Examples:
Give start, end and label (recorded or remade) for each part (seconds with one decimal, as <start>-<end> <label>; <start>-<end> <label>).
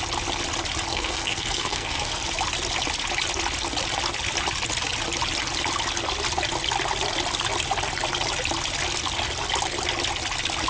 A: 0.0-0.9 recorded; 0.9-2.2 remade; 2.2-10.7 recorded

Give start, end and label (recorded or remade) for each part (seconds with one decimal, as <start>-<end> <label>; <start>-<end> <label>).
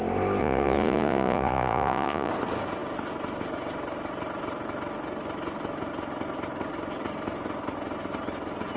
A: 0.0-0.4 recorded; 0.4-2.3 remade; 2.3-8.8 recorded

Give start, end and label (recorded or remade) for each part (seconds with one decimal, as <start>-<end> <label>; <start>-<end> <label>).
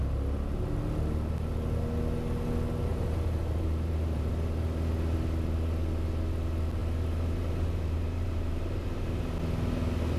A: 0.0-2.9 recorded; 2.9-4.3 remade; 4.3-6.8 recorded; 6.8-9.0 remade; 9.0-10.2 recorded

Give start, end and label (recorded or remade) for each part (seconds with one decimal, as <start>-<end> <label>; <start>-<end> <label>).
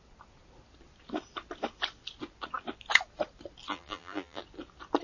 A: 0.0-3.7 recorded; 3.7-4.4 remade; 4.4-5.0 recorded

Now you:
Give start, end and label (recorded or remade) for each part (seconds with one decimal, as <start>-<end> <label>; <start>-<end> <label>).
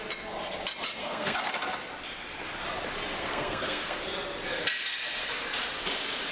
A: 0.0-1.0 recorded; 1.0-1.5 remade; 1.5-3.2 recorded; 3.2-4.0 remade; 4.0-6.3 recorded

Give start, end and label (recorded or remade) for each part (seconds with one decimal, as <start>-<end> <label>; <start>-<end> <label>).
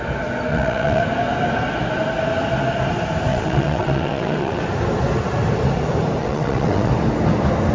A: 0.0-0.5 recorded; 0.5-1.0 remade; 1.0-3.3 recorded; 3.3-4.6 remade; 4.6-6.2 recorded; 6.2-6.9 remade; 6.9-7.7 recorded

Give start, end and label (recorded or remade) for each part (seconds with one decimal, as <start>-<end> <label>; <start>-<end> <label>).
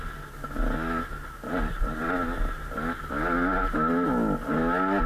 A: 0.0-5.1 recorded